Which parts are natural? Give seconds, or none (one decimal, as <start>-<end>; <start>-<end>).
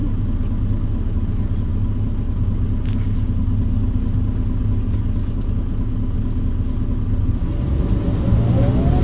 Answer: 0.0-9.0